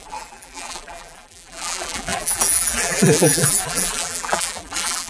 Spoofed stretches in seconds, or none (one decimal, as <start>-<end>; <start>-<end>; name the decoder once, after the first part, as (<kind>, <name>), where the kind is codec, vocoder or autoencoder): 0.0-5.1 (vocoder, BigVGAN v2)